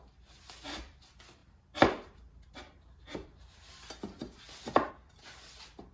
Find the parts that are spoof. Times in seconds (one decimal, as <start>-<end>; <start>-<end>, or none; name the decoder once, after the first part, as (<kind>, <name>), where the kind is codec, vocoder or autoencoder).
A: none